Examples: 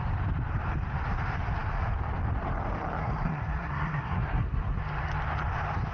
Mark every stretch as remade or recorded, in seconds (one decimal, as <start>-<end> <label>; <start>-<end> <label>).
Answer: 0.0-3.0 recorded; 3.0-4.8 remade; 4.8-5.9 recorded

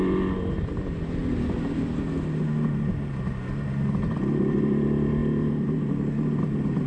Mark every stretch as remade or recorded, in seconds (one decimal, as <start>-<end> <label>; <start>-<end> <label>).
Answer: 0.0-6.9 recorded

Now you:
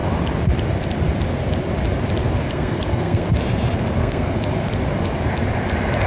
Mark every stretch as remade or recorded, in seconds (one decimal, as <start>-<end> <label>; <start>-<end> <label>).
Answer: 0.0-2.4 recorded; 2.4-3.3 remade; 3.3-4.0 recorded; 4.0-4.7 remade; 4.7-6.1 recorded

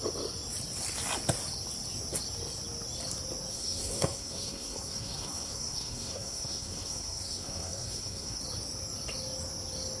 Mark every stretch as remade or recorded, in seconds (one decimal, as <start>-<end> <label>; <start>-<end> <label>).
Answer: 0.0-3.5 recorded; 3.5-8.4 remade; 8.4-10.0 recorded

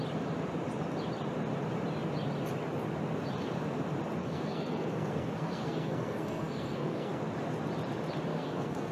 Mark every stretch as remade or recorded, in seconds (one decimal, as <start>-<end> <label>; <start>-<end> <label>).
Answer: 0.0-4.2 recorded; 4.2-7.2 remade; 7.2-8.3 recorded; 8.3-8.9 remade

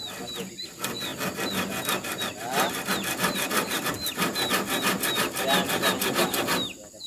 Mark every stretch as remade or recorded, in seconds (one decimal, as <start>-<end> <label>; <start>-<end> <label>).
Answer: 0.0-7.1 recorded